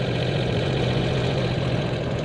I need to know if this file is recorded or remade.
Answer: remade